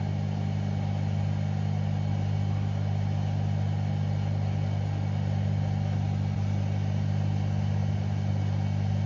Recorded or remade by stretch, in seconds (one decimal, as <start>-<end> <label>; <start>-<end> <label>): 0.0-9.1 recorded